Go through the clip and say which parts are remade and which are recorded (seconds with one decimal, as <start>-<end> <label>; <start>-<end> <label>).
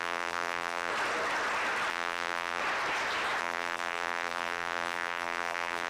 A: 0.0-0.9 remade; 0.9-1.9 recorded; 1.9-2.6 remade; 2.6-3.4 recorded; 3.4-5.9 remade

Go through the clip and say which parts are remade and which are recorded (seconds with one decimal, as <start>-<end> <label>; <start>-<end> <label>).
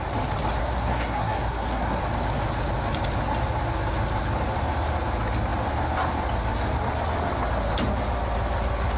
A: 0.0-0.6 recorded; 0.6-2.0 remade; 2.0-9.0 recorded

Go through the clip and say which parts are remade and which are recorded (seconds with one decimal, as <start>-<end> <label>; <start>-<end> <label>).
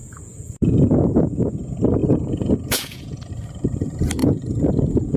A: 0.0-1.6 remade; 1.6-2.0 recorded; 2.0-3.3 remade; 3.3-4.2 recorded; 4.2-5.2 remade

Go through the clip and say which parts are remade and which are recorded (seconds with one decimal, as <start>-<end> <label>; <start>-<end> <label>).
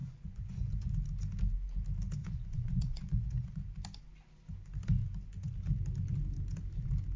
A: 0.0-0.9 remade; 0.9-2.2 recorded; 2.2-3.5 remade; 3.5-7.2 recorded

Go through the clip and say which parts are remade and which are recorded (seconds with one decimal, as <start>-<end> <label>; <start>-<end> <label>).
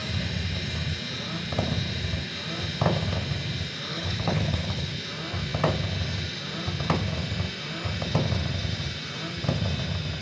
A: 0.0-3.9 recorded; 3.9-5.0 remade; 5.0-10.2 recorded